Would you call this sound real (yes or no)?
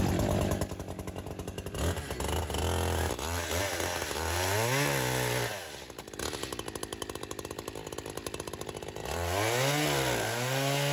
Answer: yes